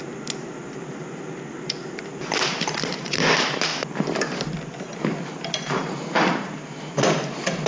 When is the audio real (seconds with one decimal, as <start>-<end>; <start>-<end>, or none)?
0.0-7.7